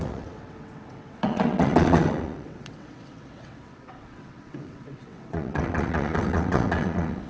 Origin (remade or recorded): remade